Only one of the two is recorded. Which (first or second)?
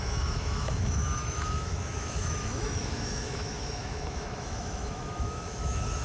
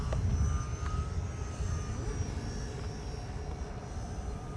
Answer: second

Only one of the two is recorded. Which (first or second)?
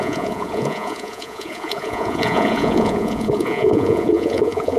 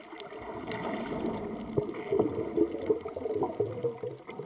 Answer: second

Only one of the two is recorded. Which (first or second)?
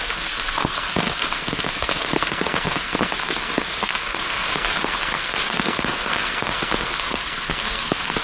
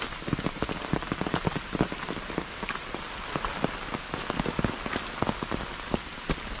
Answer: second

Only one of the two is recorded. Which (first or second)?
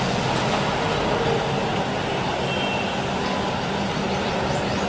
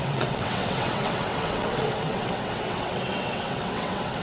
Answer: first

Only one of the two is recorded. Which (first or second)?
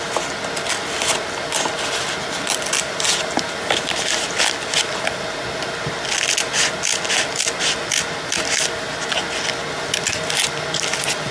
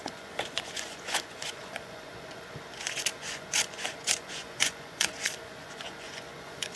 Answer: first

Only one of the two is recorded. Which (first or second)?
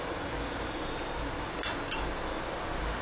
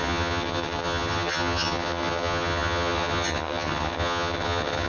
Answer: first